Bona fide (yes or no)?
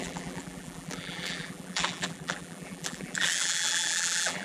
no